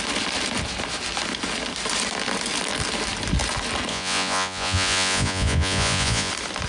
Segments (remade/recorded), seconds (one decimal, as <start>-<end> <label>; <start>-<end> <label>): 0.0-3.9 recorded; 3.9-6.3 remade; 6.3-6.7 recorded